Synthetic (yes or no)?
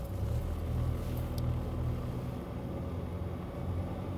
no